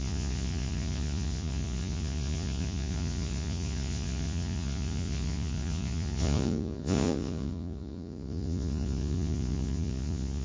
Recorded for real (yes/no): no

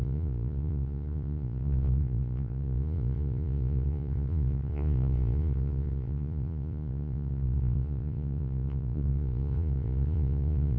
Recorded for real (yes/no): no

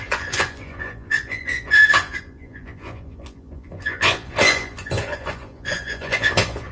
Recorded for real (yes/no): no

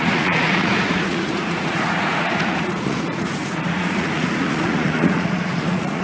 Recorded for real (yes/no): no